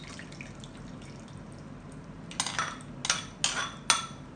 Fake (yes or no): no